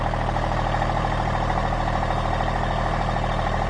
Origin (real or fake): real